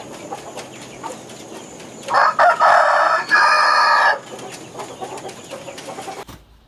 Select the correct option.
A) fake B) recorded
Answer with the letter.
B